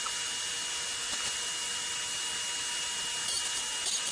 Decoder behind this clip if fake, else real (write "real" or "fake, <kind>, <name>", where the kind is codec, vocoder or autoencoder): real